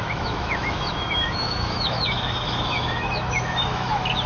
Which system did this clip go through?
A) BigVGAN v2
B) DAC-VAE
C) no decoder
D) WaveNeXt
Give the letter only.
B